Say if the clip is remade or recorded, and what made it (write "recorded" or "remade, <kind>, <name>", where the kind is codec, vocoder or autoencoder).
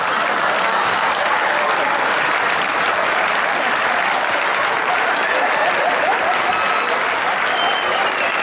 recorded